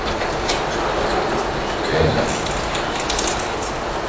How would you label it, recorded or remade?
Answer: recorded